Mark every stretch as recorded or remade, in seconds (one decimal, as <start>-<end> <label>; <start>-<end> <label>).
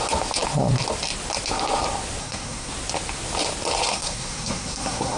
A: 0.0-2.2 recorded; 2.2-2.7 remade; 2.7-3.9 recorded; 3.9-5.2 remade